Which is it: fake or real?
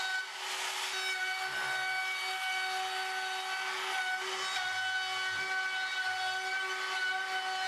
real